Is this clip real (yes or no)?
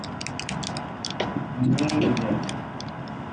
yes